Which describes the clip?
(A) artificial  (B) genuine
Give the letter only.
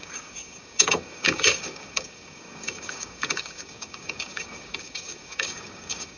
A